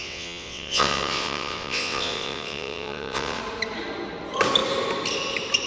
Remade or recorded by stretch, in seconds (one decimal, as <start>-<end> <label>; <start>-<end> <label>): 0.0-3.4 remade; 3.4-5.7 recorded